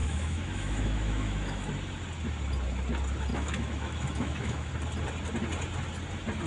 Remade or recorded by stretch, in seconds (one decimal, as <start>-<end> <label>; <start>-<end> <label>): 0.0-1.7 remade; 1.7-3.3 recorded; 3.3-4.7 remade; 4.7-6.5 recorded